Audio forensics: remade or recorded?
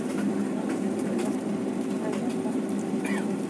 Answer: recorded